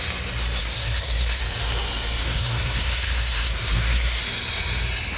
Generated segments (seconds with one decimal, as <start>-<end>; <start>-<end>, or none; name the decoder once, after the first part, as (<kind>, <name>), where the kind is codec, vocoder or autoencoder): 0.6-1.4 (codec, SNAC); 2.2-4.2